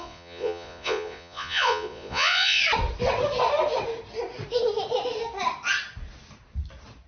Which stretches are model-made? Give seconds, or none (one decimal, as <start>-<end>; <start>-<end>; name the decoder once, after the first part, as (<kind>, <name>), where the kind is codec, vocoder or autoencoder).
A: 0.0-2.6 (vocoder, Vocos)